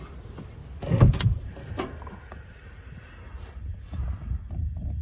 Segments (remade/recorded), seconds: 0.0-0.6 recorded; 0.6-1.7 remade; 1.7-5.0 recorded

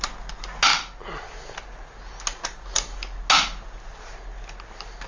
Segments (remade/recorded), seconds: 0.0-5.1 recorded

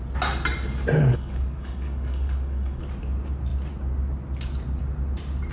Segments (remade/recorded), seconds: 0.0-1.1 recorded; 1.1-2.8 remade; 2.8-5.5 recorded

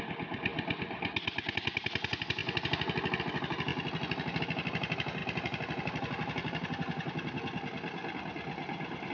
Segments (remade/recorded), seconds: 0.0-9.1 recorded

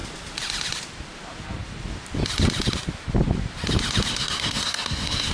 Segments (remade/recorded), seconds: 0.0-4.1 recorded; 4.1-5.3 remade

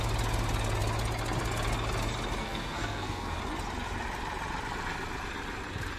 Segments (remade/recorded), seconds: 0.0-2.4 recorded; 2.4-3.4 remade; 3.4-6.0 recorded

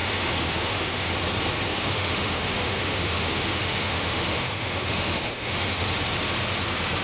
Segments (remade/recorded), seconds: 0.0-1.1 remade; 1.1-1.7 recorded; 1.7-5.9 remade; 5.9-7.0 recorded